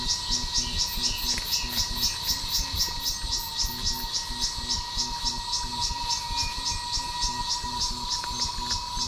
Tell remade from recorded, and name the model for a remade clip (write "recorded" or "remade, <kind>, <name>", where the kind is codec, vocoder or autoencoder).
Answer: recorded